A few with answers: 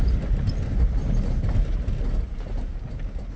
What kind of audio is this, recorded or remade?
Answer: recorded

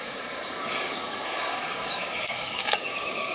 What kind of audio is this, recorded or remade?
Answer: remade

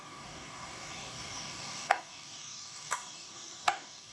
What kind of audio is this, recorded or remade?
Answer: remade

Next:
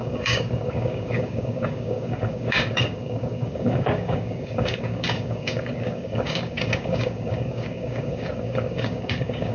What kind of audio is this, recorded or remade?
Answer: remade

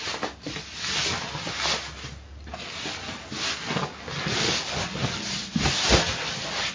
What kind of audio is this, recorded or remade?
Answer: recorded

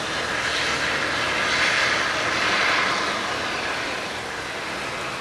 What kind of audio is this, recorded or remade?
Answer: recorded